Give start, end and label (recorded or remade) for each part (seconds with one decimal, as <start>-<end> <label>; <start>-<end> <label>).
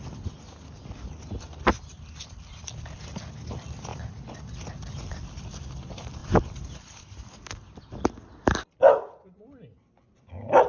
0.0-1.9 recorded; 1.9-2.6 remade; 2.6-3.9 recorded; 3.9-4.4 remade; 4.4-6.2 recorded; 6.2-8.8 remade; 8.8-10.7 recorded